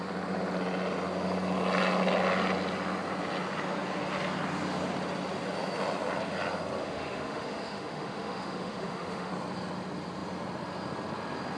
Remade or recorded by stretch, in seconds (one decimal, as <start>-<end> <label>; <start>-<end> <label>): 0.0-6.8 recorded; 6.8-9.3 remade; 9.3-11.6 recorded